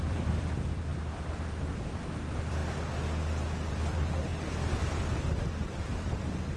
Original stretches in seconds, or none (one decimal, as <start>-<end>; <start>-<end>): 2.6-3.7